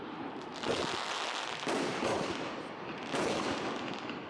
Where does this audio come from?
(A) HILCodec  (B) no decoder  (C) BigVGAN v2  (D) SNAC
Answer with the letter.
B